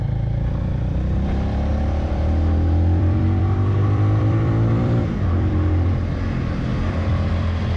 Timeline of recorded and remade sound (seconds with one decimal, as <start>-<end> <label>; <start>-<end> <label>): 0.0-1.7 recorded; 1.7-5.5 remade; 5.5-6.7 recorded; 6.7-7.8 remade